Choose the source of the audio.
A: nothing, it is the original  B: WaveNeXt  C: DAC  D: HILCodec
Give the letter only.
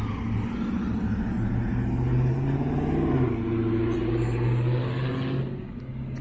A